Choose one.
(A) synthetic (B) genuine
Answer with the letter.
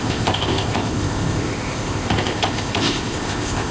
A